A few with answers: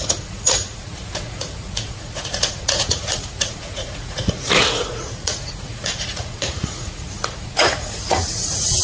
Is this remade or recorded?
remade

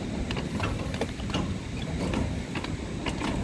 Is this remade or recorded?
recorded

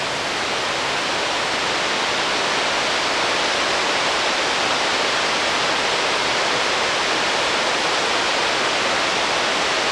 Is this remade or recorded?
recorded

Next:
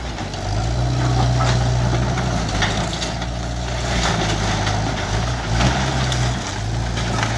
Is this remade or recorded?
recorded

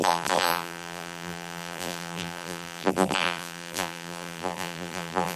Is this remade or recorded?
remade